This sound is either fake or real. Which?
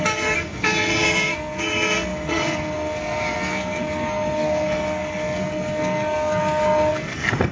fake